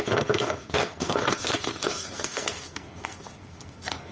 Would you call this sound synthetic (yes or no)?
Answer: yes